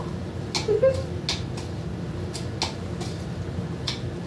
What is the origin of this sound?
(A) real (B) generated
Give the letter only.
A